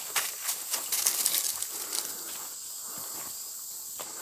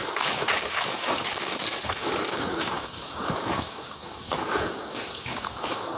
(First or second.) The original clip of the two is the first